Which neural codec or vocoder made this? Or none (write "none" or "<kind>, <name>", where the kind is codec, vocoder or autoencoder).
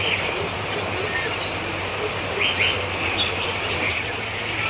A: none